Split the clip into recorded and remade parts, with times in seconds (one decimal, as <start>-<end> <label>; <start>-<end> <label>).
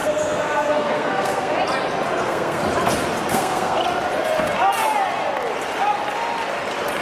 0.0-1.5 remade; 1.5-2.2 recorded; 2.2-2.6 remade; 2.6-3.3 recorded; 3.3-3.8 remade; 3.8-7.0 recorded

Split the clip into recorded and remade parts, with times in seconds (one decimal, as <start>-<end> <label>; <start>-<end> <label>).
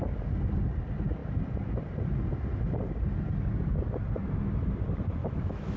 0.0-5.2 recorded; 5.2-5.8 remade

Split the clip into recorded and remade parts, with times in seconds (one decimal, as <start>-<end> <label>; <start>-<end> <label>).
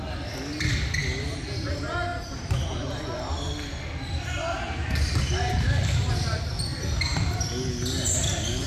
0.0-8.7 recorded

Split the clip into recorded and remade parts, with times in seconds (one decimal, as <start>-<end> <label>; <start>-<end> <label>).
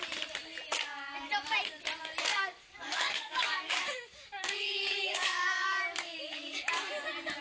0.0-2.3 recorded; 2.3-6.7 remade; 6.7-7.4 recorded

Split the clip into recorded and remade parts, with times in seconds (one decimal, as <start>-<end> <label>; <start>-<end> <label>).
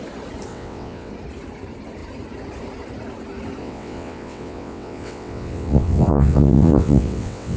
0.0-0.5 recorded; 0.5-1.1 remade; 1.1-3.6 recorded; 3.6-7.6 remade